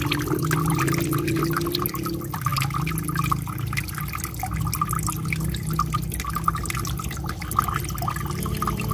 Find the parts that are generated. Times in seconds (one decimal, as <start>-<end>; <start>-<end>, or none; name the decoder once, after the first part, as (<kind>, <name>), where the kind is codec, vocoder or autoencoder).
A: none